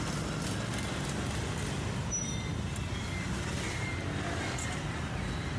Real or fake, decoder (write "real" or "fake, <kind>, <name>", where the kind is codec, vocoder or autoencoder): real